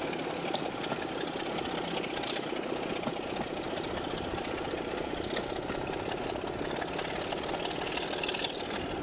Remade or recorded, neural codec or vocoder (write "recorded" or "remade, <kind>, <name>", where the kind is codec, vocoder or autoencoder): recorded